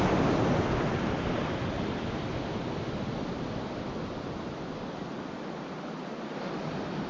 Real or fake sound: real